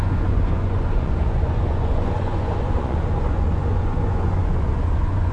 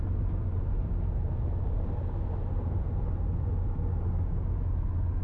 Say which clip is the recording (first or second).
second